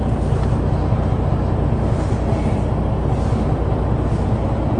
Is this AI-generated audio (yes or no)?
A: no